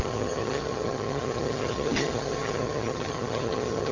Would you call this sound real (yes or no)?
no